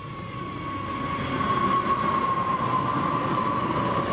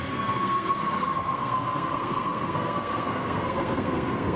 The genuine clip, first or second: first